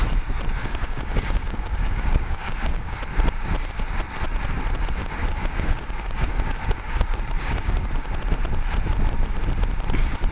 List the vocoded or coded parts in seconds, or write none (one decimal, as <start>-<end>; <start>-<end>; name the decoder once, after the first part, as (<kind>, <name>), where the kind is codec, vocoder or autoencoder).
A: 0.6-3.0 (codec, DAC); 5.0-7.9